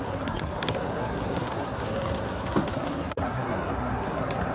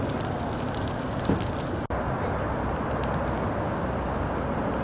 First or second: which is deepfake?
first